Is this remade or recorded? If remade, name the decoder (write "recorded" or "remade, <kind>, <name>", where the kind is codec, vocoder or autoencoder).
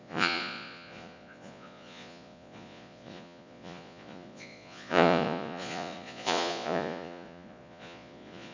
remade, vocoder, Vocos